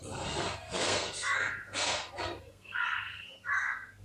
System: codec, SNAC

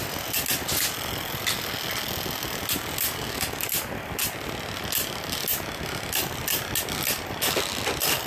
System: none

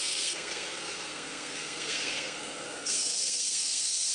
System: codec, SNAC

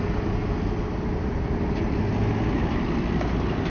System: none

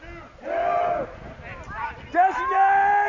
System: none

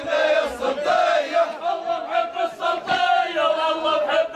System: none